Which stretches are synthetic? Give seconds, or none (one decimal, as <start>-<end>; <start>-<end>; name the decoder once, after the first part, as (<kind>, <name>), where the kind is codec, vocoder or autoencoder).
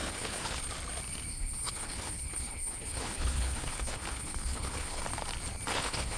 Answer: 0.0-0.6 (codec, HILCodec); 1.3-5.0; 5.7-6.2